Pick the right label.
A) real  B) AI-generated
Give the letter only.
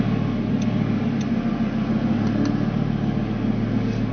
A